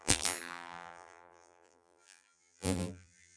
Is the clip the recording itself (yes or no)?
no